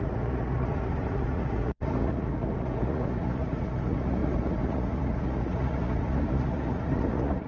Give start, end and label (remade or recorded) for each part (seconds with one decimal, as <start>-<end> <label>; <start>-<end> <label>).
0.0-7.5 remade